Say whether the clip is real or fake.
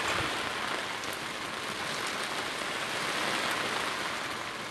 real